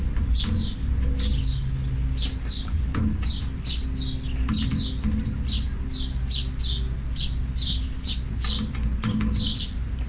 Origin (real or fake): real